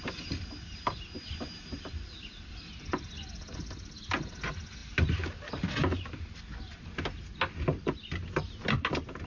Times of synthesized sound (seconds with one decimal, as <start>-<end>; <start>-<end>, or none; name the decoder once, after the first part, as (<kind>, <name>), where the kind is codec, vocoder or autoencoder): none